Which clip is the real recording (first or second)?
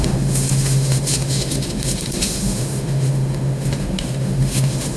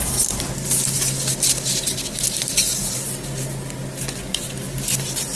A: second